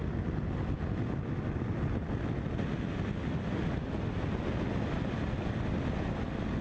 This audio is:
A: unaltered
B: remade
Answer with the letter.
A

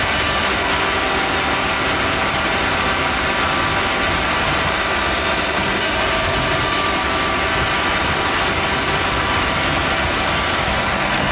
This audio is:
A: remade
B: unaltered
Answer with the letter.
B